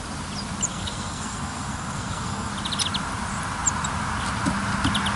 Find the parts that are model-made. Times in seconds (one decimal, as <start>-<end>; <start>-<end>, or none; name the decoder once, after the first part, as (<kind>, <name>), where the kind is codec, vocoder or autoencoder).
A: 0.7-2.5 (codec, SNAC)

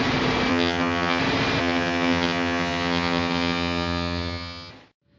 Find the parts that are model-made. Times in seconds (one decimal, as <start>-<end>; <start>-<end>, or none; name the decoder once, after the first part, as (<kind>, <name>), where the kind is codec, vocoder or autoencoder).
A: 0.5-1.2 (vocoder, HiFi-GAN); 1.6-4.7

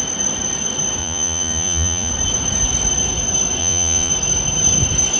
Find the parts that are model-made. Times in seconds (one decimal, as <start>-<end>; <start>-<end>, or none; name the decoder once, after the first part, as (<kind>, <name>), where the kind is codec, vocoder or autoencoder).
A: 1.0-2.1 (vocoder, Vocos); 3.6-4.1

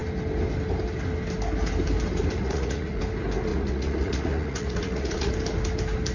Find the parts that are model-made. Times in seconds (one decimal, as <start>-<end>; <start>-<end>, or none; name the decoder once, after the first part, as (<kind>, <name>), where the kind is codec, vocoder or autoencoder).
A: 2.4-3.0 (vocoder, Vocos); 3.5-5.3